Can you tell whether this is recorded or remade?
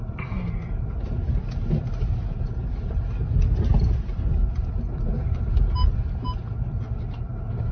recorded